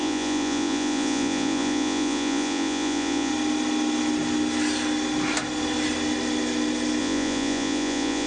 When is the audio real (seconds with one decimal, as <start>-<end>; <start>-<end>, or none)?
3.3-7.0